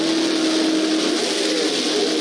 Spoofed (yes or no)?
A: no